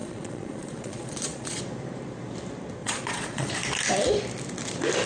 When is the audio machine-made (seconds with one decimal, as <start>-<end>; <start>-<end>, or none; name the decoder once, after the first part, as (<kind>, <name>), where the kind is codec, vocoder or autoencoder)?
0.0-1.6 (vocoder, Vocos); 2.8-3.5